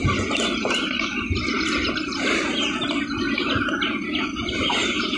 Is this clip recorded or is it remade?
recorded